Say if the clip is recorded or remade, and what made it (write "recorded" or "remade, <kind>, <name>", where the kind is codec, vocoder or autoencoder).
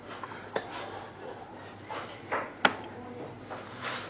recorded